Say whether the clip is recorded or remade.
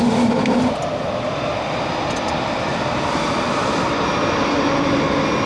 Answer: recorded